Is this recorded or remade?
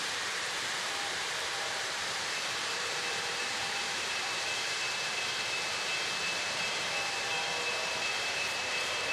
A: remade